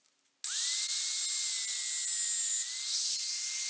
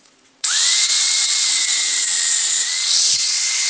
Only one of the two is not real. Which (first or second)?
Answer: second